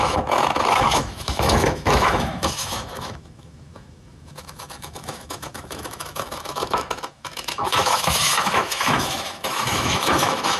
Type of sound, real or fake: fake